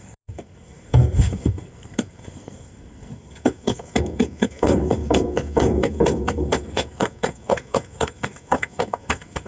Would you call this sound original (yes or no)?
no